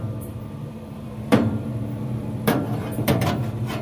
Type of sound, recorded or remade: remade